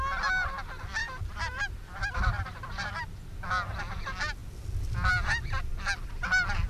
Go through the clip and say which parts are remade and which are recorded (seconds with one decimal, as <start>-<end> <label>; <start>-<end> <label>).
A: 0.0-1.0 recorded; 1.0-3.4 remade; 3.4-6.7 recorded